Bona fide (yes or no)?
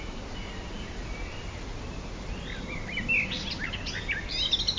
yes